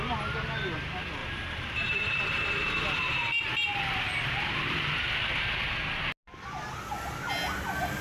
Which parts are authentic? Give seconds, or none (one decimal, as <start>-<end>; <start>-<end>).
0.0-1.2; 3.2-3.7; 4.9-8.0